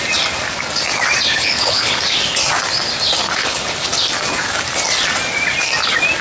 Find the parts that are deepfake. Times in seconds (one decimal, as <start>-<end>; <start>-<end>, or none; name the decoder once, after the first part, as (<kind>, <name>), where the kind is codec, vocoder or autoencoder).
1.3-2.0 (codec, HILCodec); 3.4-3.9